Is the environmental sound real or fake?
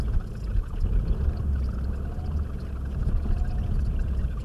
real